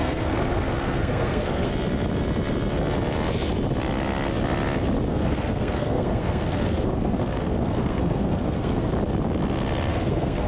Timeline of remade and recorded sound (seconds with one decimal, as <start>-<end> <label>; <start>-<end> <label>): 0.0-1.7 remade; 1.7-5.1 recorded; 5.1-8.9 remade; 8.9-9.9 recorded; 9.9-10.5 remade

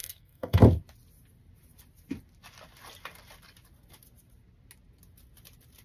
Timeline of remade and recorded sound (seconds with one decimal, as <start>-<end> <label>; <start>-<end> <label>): 0.0-0.6 remade; 0.6-5.8 recorded

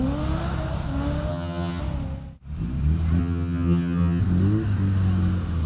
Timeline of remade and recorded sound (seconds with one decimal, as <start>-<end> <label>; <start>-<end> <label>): 0.0-1.3 recorded; 1.3-1.8 remade; 1.8-3.2 recorded; 3.2-4.2 remade; 4.2-5.7 recorded

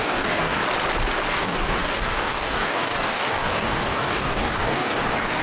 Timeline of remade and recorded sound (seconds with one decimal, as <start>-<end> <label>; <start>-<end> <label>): 0.0-0.6 remade; 0.6-1.3 recorded; 1.3-5.4 remade

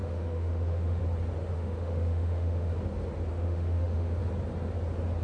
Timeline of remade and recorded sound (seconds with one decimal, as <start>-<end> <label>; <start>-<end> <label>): 0.0-1.0 remade; 1.0-1.5 recorded; 1.5-2.7 remade; 2.7-3.3 recorded; 3.3-4.2 remade; 4.2-5.2 recorded